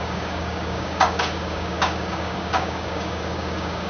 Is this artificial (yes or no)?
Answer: yes